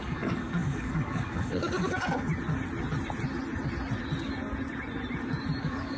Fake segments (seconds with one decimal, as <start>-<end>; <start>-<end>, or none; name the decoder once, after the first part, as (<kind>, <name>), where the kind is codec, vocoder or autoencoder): 0.0-2.3 (codec, DAC); 5.6-6.0